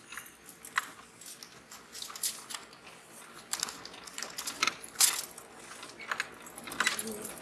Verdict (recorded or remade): recorded